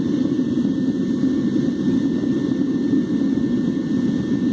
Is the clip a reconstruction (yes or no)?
no